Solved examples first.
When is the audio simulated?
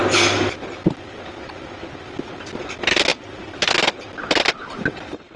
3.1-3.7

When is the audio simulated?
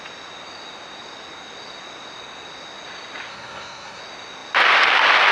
3.3-4.0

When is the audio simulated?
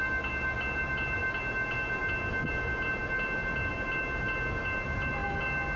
none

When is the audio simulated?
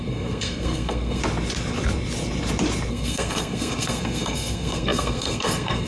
0.0-1.2; 2.9-5.9